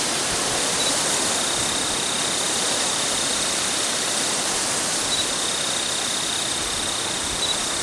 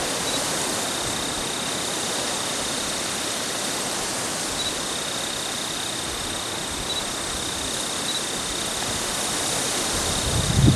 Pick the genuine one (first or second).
second